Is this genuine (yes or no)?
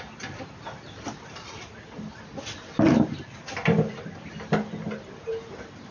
yes